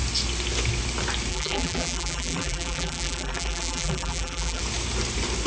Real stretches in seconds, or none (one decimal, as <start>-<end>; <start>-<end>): 0.0-1.3; 4.6-5.5